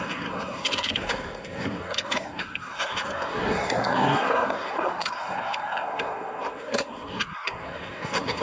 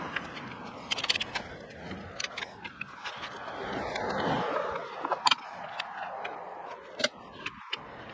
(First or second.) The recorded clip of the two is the second